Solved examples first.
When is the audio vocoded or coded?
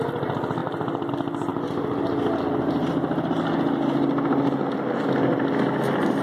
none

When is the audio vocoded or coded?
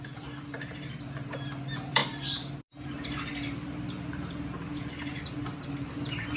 0.0-6.4 (vocoder, BigVGAN v2)